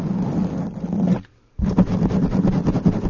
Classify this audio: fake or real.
real